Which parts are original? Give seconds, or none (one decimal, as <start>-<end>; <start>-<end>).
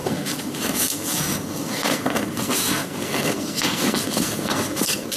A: none